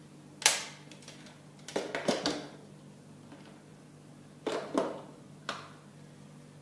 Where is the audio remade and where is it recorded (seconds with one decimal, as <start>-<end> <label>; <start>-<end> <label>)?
0.0-6.6 recorded